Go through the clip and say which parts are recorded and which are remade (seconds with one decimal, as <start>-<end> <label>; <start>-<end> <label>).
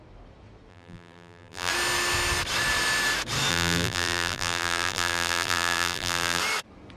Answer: 0.0-0.7 recorded; 0.7-1.7 remade; 1.7-3.5 recorded; 3.5-6.4 remade; 6.4-7.0 recorded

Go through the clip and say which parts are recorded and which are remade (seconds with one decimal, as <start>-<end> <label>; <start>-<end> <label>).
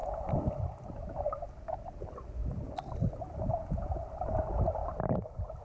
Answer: 0.0-0.6 remade; 0.6-4.8 recorded; 4.8-5.6 remade